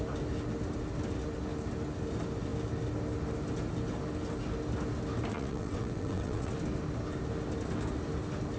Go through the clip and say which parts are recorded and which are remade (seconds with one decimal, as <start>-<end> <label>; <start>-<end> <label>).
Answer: 0.0-5.3 recorded; 5.3-6.5 remade; 6.5-8.6 recorded